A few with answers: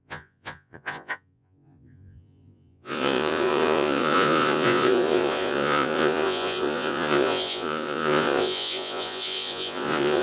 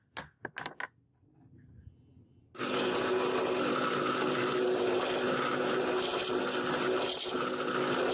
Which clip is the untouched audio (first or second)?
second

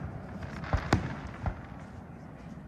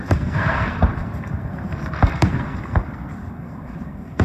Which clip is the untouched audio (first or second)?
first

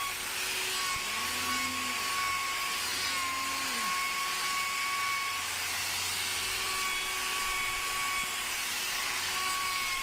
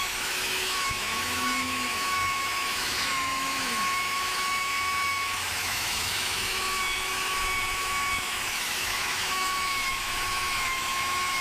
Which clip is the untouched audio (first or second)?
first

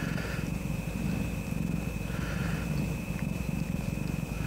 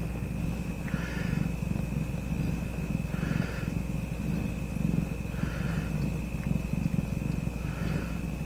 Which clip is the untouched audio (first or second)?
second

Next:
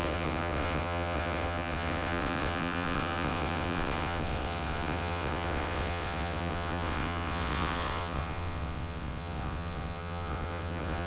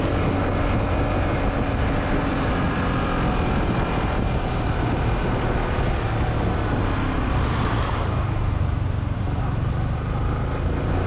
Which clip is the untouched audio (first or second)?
second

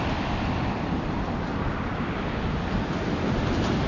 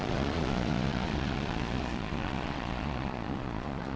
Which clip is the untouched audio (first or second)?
first